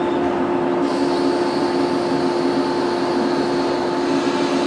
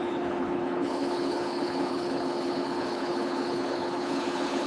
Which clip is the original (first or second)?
first